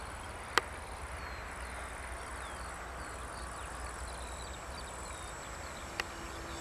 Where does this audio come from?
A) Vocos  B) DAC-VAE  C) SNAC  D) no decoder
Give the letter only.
D